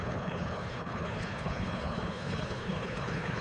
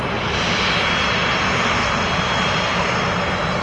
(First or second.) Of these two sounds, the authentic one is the second